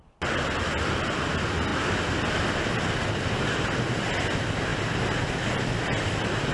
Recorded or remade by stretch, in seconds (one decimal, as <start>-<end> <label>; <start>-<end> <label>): 0.0-6.5 recorded